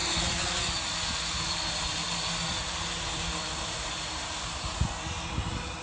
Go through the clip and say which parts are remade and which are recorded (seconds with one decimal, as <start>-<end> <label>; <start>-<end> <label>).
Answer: 0.0-3.5 recorded; 3.5-5.8 remade